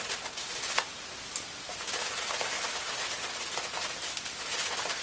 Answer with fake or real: real